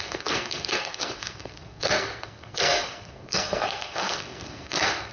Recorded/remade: remade